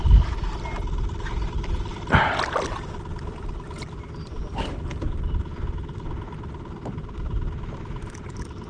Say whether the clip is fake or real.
real